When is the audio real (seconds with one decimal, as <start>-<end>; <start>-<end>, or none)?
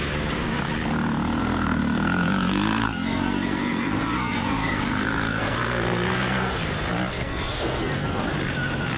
0.0-1.4; 6.5-7.1; 8.2-9.0